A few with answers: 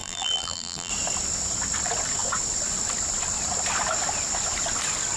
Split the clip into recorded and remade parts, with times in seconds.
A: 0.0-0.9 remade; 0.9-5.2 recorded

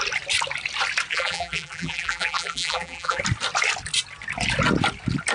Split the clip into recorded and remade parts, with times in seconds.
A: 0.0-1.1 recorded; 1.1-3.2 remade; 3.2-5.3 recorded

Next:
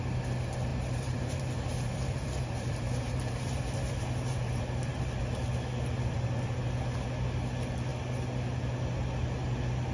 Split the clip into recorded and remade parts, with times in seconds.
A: 0.0-0.7 recorded; 0.7-5.1 remade; 5.1-9.9 recorded

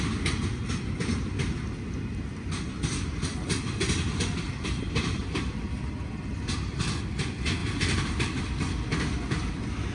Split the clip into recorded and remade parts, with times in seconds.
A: 0.0-5.2 recorded; 5.2-6.3 remade; 6.3-7.6 recorded; 7.6-8.4 remade; 8.4-9.9 recorded

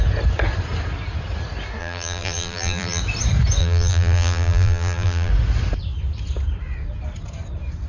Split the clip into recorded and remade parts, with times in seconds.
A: 0.0-1.8 recorded; 1.8-3.0 remade; 3.0-3.6 recorded; 3.6-5.3 remade; 5.3-7.9 recorded